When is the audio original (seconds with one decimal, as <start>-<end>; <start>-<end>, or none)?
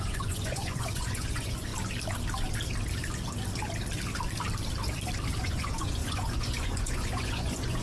1.7-5.4